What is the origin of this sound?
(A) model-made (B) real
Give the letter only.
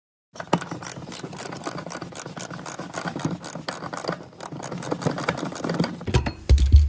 B